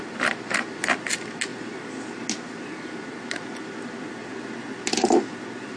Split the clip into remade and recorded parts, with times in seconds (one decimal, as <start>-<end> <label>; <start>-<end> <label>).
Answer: 0.0-5.8 recorded